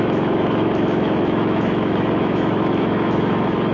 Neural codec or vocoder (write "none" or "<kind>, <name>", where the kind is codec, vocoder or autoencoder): autoencoder, DAC-VAE